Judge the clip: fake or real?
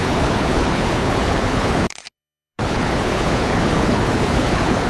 fake